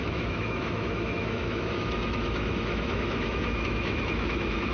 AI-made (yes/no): yes